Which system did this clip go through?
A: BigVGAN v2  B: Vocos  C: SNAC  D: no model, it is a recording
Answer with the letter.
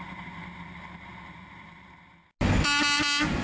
D